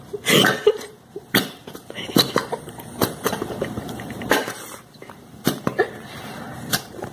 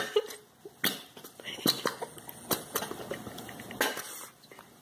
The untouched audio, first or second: second